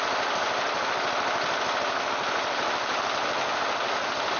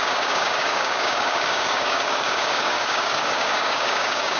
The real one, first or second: first